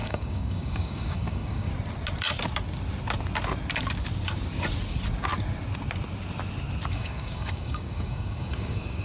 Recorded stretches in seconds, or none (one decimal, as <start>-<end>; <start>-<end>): 1.7-6.9